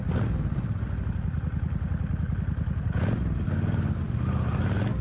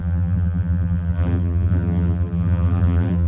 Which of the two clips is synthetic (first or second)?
second